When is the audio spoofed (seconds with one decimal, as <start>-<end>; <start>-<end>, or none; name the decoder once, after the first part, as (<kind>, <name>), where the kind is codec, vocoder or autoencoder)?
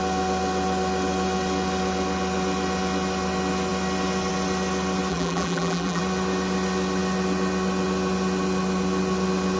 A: 5.1-6.0 (vocoder, BigVGAN v2)